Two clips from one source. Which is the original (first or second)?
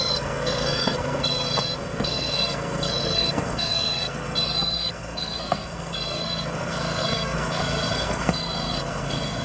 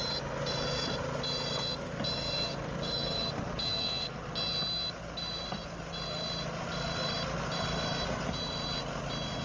second